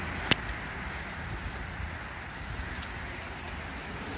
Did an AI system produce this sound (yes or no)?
no